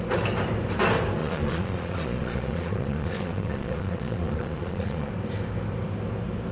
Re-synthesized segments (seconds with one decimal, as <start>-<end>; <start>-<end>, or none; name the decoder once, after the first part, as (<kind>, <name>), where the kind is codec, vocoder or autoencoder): 1.2-5.1 (vocoder, Vocos)